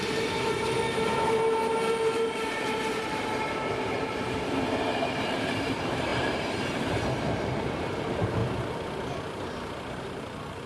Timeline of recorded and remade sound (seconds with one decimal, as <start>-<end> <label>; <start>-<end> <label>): 0.0-8.4 remade; 8.4-10.7 recorded